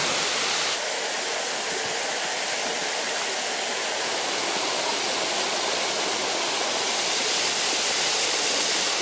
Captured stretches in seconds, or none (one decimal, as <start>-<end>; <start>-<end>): 0.0-6.2; 8.5-9.0